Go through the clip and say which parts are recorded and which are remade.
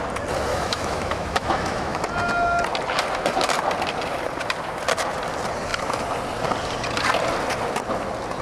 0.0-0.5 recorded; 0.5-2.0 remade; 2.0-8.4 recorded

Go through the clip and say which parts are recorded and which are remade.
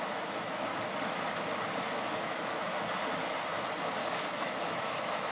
0.0-0.7 remade; 0.7-1.9 recorded; 1.9-2.7 remade; 2.7-4.1 recorded; 4.1-5.3 remade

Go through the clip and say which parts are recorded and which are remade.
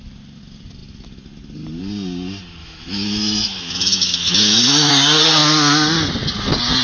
0.0-2.6 recorded; 2.6-4.9 remade; 4.9-6.8 recorded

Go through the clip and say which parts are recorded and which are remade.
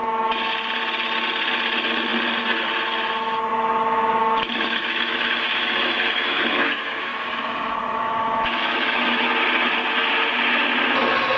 0.0-0.5 remade; 0.5-4.2 recorded; 4.2-9.3 remade; 9.3-11.4 recorded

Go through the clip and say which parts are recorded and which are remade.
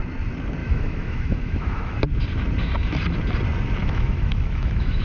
0.0-0.6 recorded; 0.6-2.0 remade; 2.0-3.8 recorded; 3.8-5.0 remade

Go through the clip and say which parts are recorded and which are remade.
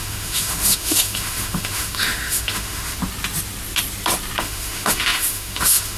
0.0-3.0 remade; 3.0-4.4 recorded; 4.4-6.0 remade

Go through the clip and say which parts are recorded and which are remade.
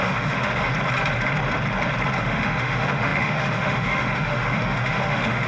0.0-0.7 remade; 0.7-2.2 recorded; 2.2-5.5 remade